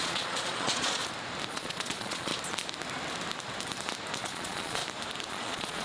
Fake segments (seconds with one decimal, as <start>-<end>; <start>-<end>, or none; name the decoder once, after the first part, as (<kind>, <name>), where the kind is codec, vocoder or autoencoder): 0.0-1.0 (vocoder, Vocos); 1.5-2.3; 4.2-4.8; 5.3-5.8